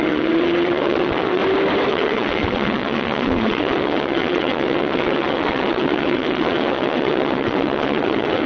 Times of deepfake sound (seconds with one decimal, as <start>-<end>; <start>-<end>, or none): 0.0-1.4; 1.9-8.5